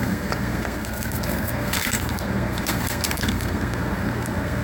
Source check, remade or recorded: remade